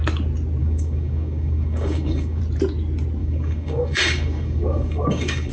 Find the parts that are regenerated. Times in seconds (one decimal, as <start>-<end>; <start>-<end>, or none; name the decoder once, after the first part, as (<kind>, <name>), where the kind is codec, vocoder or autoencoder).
0.6-2.4 (codec, DAC); 3.2-5.5